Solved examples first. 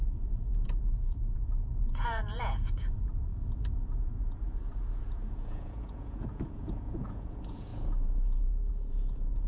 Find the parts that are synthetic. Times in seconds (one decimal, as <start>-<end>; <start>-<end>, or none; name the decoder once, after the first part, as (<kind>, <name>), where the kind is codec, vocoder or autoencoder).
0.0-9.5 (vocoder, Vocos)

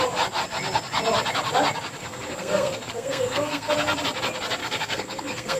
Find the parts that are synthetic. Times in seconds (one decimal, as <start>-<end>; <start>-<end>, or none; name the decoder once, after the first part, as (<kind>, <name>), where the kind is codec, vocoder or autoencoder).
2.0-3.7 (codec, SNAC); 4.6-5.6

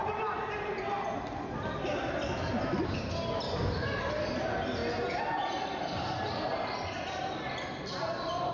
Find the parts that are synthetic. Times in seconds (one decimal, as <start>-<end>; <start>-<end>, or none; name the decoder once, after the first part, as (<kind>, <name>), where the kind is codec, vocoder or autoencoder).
4.8-5.4 (vocoder, BigVGAN v2)